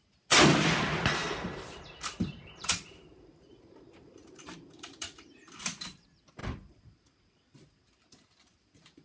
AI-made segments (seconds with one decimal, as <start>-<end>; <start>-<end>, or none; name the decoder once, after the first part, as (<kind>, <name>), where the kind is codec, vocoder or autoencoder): 1.2-6.0 (vocoder, BigVGAN v2); 6.4-7.4